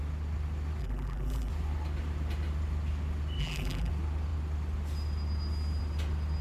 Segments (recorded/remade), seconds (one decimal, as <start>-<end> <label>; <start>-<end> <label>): 0.0-0.8 recorded; 0.8-1.5 remade; 1.5-3.4 recorded; 3.4-3.9 remade; 3.9-6.4 recorded